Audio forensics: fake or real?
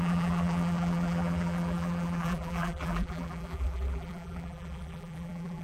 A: fake